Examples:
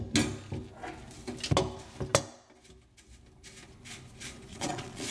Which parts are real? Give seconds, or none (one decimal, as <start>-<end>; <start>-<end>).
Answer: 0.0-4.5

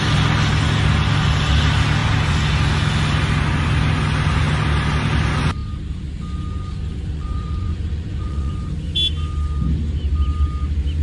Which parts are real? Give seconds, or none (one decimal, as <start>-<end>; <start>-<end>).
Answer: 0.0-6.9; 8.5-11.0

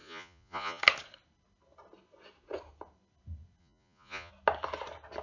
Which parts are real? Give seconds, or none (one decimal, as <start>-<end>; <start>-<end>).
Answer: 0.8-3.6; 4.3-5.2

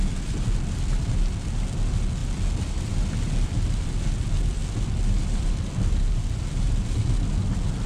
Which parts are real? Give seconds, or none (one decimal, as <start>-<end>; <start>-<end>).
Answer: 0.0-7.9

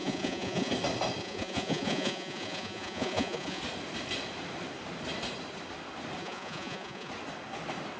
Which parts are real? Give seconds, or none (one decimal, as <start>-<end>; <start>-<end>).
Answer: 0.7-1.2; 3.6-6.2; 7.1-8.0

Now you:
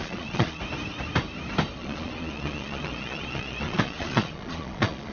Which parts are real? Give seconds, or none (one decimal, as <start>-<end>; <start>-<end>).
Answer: 0.6-1.8

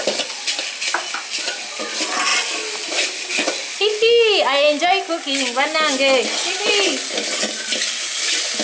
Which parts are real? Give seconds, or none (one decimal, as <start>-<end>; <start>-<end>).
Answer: 0.0-8.6